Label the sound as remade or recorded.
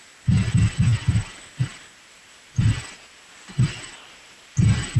recorded